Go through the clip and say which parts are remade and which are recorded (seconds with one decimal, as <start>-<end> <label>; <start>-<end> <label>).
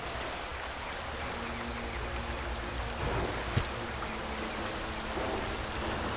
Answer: 0.0-6.2 recorded